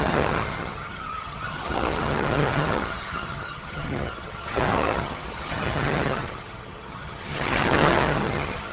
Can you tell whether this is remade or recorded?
remade